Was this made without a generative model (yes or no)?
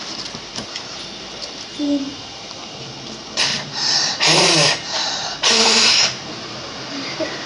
no